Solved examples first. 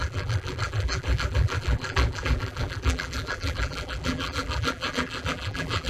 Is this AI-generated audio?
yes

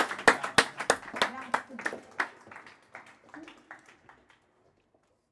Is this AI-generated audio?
no